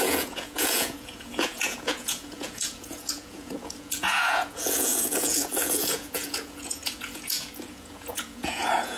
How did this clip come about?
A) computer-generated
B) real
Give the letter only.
A